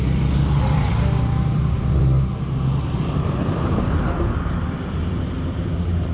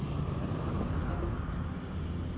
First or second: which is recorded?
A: second